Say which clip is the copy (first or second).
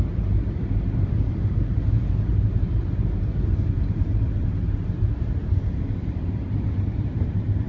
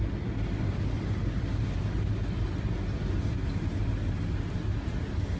first